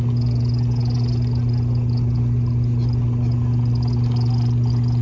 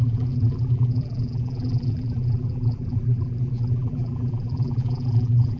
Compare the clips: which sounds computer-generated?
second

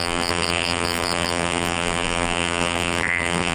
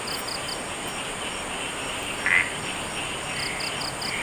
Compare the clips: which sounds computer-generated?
first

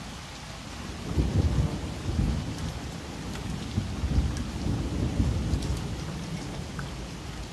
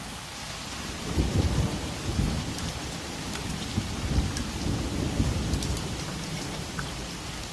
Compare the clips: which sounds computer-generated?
second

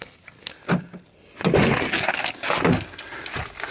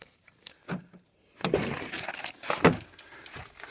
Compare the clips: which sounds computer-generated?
second